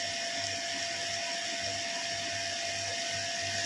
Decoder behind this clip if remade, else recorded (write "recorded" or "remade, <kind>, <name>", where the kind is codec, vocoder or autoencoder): recorded